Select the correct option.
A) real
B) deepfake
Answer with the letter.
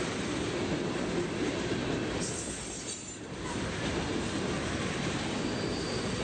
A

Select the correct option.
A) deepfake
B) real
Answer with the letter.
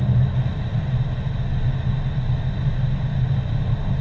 B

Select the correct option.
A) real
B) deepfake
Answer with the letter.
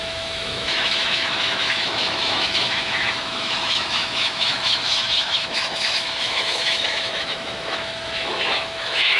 B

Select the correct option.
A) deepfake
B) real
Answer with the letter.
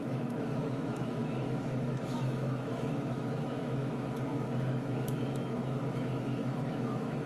A